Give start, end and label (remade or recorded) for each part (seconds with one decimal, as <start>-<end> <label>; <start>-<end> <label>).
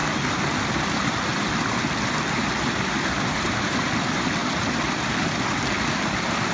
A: 0.0-6.5 remade